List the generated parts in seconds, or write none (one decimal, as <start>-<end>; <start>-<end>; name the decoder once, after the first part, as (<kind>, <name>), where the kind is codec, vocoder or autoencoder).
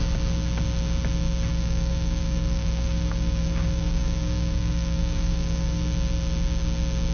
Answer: 1.5-5.8 (codec, DAC)